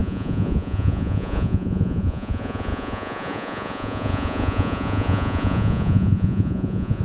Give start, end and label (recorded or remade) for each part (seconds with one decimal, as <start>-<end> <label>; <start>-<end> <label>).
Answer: 0.0-7.0 remade

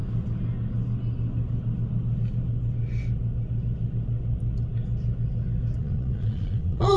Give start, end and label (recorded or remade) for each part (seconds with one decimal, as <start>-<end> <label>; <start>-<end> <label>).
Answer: 0.0-5.8 recorded; 5.8-7.0 remade

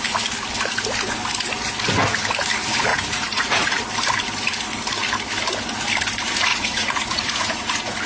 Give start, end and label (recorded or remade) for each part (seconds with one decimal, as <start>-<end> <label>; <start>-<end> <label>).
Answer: 0.0-2.9 recorded; 2.9-3.8 remade; 3.8-6.5 recorded; 6.5-8.1 remade

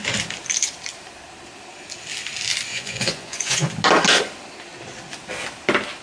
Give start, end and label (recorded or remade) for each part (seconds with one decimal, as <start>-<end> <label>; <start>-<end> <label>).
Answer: 0.0-2.7 recorded; 2.7-3.7 remade; 3.7-6.0 recorded

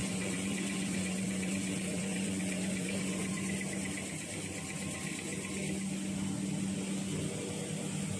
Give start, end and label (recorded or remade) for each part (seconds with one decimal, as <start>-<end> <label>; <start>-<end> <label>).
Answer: 0.0-3.5 remade; 3.5-8.2 recorded

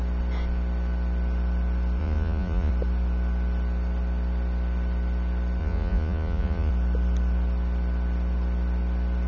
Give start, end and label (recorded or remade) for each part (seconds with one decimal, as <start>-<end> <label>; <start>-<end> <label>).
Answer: 0.0-2.0 recorded; 2.0-2.7 remade; 2.7-5.6 recorded; 5.6-6.7 remade; 6.7-9.3 recorded

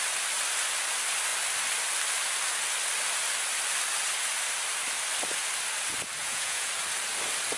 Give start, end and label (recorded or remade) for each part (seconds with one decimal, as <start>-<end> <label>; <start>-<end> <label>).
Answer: 0.0-6.2 recorded; 6.2-6.7 remade; 6.7-7.6 recorded